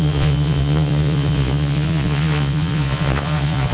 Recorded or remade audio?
remade